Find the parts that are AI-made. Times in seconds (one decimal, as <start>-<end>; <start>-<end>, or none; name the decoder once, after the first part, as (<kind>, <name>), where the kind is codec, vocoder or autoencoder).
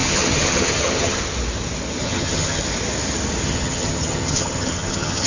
0.0-1.2 (vocoder, HiFi-GAN); 2.0-2.6; 3.4-5.3